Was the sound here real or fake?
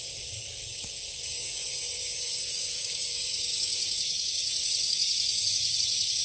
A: fake